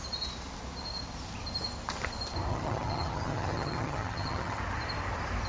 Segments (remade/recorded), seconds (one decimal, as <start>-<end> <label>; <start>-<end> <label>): 0.0-2.5 recorded; 2.5-4.6 remade; 4.6-5.5 recorded